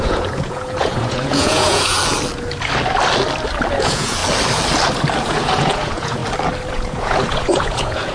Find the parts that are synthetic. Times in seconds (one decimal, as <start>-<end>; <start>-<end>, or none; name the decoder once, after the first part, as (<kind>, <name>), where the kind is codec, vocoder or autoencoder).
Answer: 0.0-2.0 (vocoder, Vocos); 3.7-4.2; 5.2-6.2; 6.7-8.1